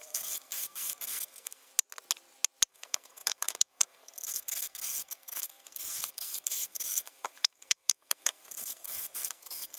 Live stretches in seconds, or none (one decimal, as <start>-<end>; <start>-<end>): 1.7-2.7